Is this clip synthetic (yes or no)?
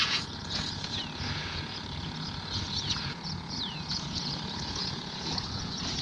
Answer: yes